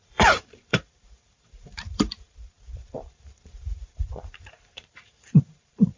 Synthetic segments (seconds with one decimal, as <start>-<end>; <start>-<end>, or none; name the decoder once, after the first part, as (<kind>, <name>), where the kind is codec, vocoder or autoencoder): 0.0-6.0 (vocoder, BigVGAN v2)